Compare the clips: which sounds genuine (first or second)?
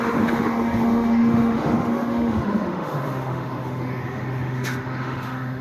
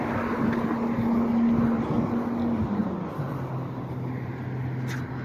second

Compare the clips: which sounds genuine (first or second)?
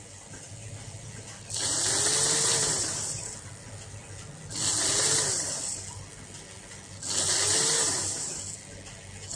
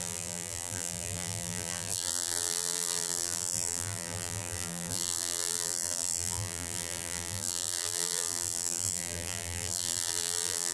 first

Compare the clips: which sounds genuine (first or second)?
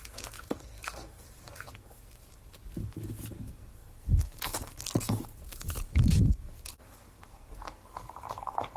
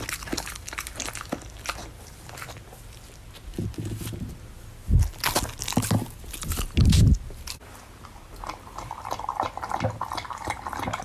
second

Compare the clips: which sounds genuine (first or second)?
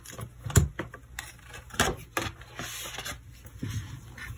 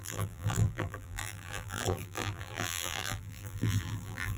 first